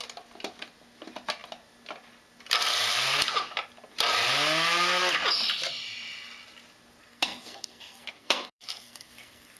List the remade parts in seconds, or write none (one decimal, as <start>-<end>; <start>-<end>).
7.0-9.6